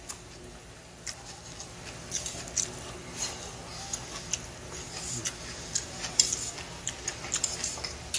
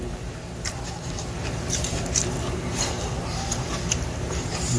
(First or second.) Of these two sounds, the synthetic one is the second